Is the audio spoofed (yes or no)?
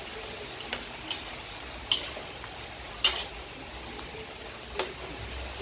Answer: no